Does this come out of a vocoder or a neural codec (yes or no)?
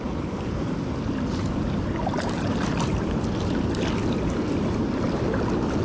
no